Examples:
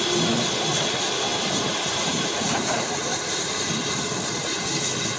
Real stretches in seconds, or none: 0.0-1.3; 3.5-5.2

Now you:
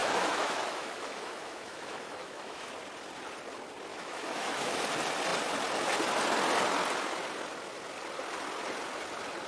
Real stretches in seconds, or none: 2.7-3.9; 4.8-9.5

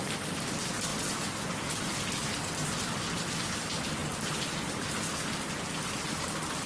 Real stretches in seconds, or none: 0.0-6.7

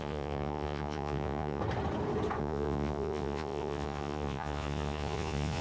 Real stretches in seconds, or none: 1.6-2.4